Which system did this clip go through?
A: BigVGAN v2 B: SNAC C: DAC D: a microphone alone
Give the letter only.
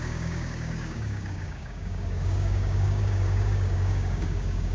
C